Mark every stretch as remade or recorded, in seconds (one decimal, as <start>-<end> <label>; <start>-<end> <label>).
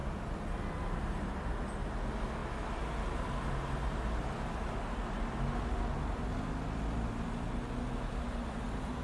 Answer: 0.0-9.0 recorded